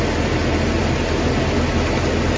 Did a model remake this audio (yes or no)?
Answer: no